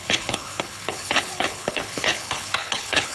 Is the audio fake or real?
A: fake